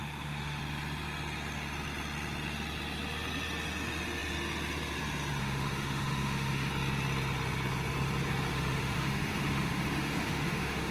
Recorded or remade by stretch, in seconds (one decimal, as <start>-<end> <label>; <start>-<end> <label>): 0.0-0.6 remade; 0.6-5.4 recorded; 5.4-6.7 remade; 6.7-8.5 recorded; 8.5-10.9 remade